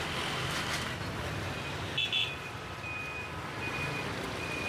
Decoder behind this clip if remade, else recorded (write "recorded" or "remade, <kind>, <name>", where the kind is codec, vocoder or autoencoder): recorded